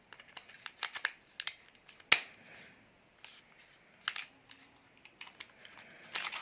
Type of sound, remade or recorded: recorded